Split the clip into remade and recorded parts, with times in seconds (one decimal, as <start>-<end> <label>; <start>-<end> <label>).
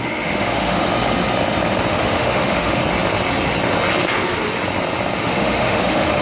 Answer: 0.0-0.9 remade; 0.9-1.9 recorded; 1.9-2.8 remade; 2.8-5.2 recorded; 5.2-6.2 remade